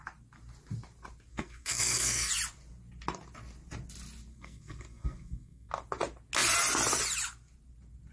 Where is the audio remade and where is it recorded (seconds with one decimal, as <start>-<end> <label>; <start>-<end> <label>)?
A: 0.0-1.3 recorded; 1.3-2.3 remade; 2.3-4.3 recorded; 4.3-5.7 remade; 5.7-8.1 recorded